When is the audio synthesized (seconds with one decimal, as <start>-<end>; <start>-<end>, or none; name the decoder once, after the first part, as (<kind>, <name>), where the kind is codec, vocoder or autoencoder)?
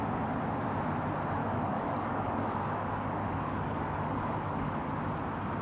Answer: 1.4-4.8 (codec, DAC)